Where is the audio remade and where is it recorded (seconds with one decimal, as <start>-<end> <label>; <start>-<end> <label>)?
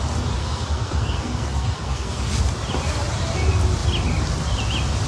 0.0-0.4 recorded; 0.4-2.4 remade; 2.4-5.1 recorded